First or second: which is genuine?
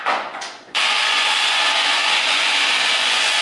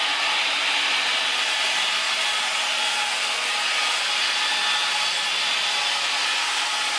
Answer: second